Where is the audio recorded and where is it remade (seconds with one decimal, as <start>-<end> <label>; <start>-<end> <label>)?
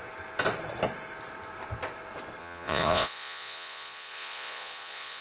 0.0-2.4 recorded; 2.4-5.2 remade